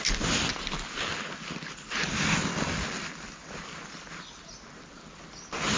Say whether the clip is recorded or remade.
recorded